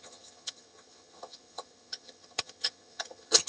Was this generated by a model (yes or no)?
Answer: yes